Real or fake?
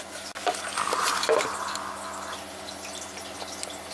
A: real